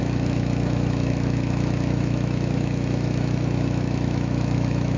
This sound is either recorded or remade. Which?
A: remade